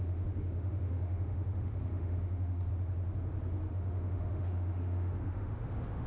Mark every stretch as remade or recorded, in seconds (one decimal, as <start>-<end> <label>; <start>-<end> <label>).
0.0-2.7 remade; 2.7-3.7 recorded; 3.7-6.1 remade